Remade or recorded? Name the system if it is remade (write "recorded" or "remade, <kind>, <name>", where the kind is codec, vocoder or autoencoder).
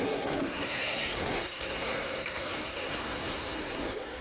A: remade, codec, SNAC